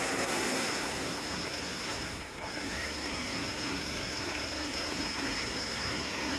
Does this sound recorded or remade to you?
remade